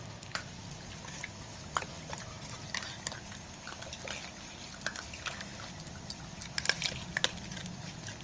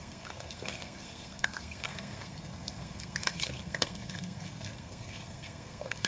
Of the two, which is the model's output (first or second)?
second